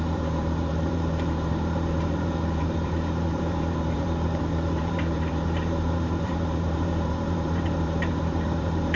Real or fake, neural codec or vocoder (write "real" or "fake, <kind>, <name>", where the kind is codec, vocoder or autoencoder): fake, vocoder, BigVGAN v2